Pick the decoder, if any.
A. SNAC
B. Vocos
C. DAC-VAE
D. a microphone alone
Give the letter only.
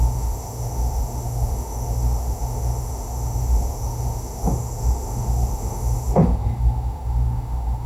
C